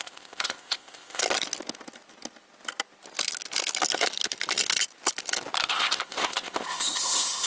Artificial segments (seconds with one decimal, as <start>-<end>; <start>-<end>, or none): 0.0-1.2; 5.7-7.5

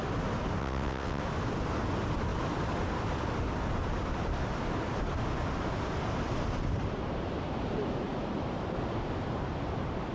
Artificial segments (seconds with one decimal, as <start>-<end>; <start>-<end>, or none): 0.6-1.2

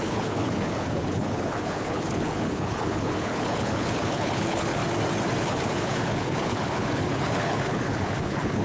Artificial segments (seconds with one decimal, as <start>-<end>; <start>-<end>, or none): 0.0-4.8; 5.4-8.6

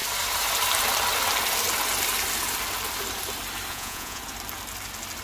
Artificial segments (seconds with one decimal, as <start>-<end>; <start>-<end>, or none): 3.7-4.2

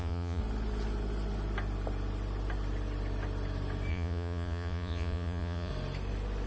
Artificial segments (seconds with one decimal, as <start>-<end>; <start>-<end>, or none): 0.0-0.4; 3.9-5.7